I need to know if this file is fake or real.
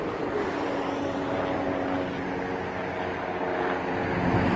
real